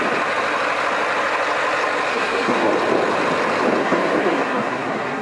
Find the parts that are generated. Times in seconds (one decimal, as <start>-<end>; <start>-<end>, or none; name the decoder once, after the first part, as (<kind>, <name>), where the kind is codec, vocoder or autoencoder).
2.1-2.7 (codec, SNAC); 3.8-5.2